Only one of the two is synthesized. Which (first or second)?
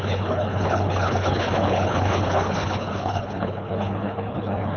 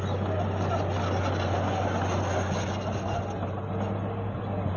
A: first